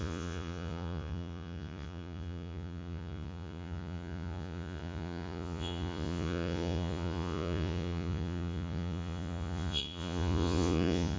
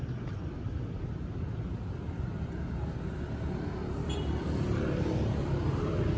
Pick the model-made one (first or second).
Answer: first